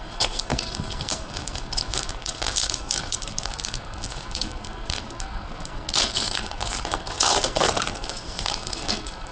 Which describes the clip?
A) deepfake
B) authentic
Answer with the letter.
A